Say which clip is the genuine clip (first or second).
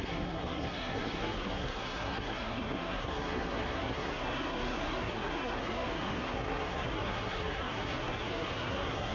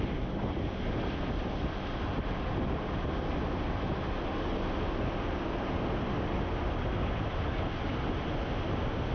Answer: second